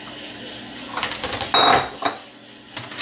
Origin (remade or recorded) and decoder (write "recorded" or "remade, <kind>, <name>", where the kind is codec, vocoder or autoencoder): recorded